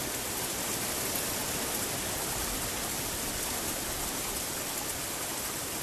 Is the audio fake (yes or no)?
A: no